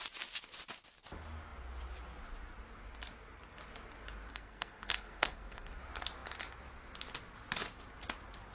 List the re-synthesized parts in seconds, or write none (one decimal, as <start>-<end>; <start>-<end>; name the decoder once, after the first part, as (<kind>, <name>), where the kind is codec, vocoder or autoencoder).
4.3-5.8 (codec, SNAC)